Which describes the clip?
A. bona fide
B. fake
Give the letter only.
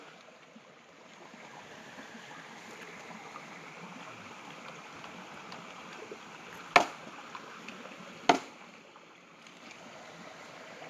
A